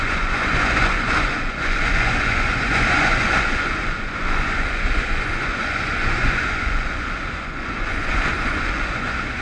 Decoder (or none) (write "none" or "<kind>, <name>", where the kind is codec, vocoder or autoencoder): vocoder, Vocos